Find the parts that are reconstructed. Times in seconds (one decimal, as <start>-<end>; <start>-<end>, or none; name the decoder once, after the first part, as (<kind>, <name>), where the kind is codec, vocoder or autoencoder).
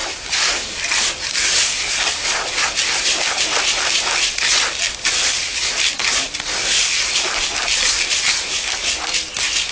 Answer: none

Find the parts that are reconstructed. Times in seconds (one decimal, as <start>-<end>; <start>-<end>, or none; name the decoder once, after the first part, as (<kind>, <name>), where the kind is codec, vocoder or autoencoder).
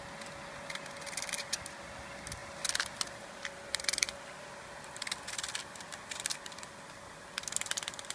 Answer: 2.4-5.6 (vocoder, BigVGAN v2)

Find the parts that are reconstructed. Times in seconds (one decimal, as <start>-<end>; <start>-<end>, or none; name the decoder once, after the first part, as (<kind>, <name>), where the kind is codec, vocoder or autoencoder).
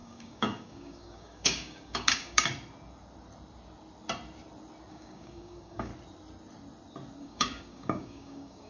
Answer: 0.0-2.5 (codec, DAC); 4.9-5.9; 7.2-8.7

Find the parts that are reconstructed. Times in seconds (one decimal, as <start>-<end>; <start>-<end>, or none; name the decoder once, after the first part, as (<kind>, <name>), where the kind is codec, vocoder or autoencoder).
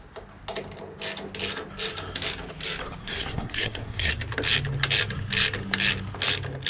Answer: 3.0-4.1 (codec, SNAC)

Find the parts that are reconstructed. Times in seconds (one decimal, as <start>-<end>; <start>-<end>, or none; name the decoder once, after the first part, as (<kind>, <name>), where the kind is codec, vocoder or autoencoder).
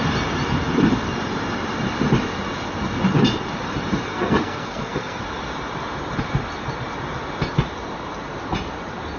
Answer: 4.1-5.2 (codec, SNAC)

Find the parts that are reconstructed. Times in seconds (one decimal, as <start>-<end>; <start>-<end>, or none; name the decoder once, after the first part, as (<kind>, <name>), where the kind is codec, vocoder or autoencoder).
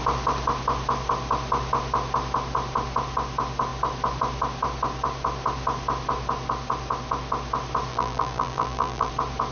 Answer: 7.9-9.1 (vocoder, BigVGAN v2)